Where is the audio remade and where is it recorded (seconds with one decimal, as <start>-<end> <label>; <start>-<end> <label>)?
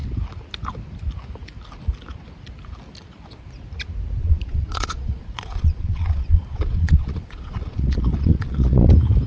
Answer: 0.0-4.2 recorded; 4.2-8.9 remade; 8.9-9.3 recorded